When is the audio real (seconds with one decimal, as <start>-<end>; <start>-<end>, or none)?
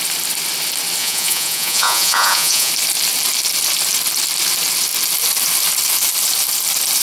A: 0.0-1.0; 2.7-7.0